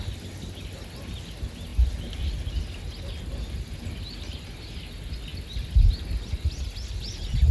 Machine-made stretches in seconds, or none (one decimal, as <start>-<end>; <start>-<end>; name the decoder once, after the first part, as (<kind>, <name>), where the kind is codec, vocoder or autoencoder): none